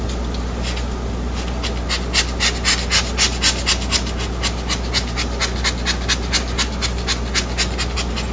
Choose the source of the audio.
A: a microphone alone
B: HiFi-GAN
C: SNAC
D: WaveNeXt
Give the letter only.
A